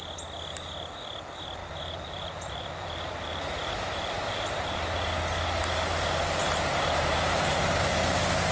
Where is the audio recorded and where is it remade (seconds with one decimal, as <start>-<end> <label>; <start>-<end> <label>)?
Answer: 0.0-1.6 recorded; 1.6-4.8 remade; 4.8-6.4 recorded; 6.4-8.1 remade; 8.1-8.5 recorded